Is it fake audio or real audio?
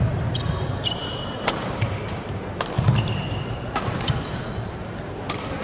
fake